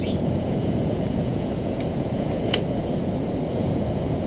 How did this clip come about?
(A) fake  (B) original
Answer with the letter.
A